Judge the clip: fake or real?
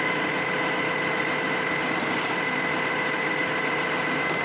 real